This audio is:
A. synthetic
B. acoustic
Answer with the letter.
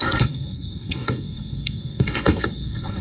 A